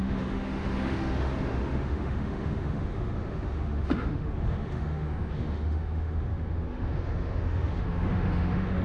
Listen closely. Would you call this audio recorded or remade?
remade